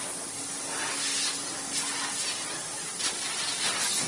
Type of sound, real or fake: real